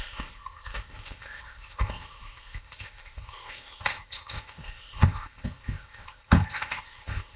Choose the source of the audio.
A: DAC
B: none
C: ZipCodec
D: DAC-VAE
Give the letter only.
C